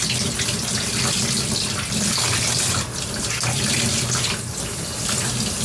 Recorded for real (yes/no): yes